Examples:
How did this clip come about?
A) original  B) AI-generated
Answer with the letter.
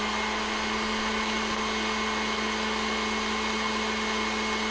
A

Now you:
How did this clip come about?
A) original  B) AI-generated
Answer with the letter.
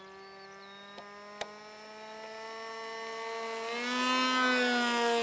A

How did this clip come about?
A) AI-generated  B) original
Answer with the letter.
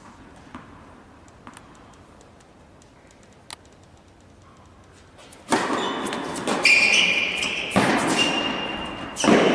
B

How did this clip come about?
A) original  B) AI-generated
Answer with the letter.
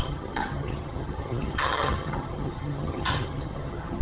B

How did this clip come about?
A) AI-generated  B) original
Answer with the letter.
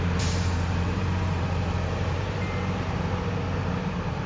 A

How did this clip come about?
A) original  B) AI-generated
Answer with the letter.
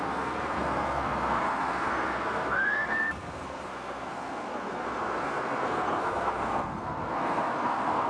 B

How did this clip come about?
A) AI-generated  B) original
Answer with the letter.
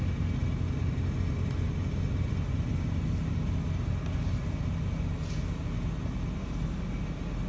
B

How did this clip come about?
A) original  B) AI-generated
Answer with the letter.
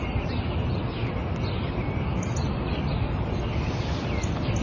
A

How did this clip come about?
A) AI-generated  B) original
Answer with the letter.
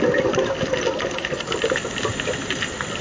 A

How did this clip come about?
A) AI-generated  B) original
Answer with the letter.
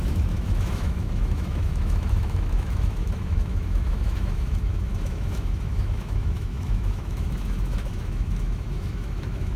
A